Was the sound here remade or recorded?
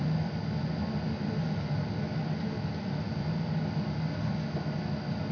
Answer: recorded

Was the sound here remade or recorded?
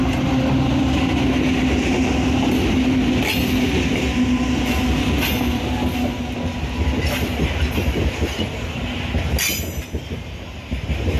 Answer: recorded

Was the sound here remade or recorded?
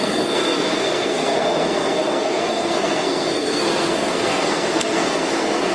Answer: remade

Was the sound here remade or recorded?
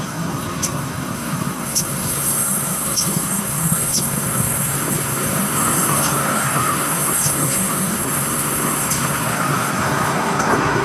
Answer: remade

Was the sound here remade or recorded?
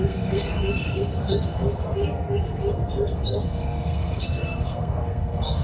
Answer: remade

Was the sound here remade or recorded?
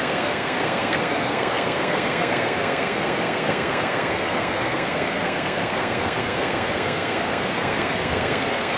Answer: remade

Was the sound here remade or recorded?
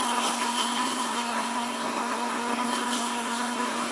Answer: remade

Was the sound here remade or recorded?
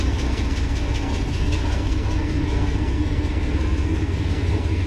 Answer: remade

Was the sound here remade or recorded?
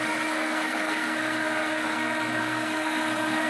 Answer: remade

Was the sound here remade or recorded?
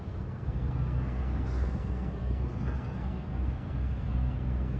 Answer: remade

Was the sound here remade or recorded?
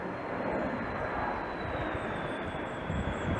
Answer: recorded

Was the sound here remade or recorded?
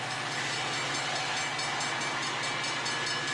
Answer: recorded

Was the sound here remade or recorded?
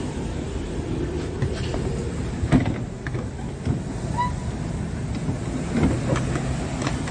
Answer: recorded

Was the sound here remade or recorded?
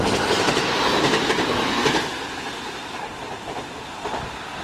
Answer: recorded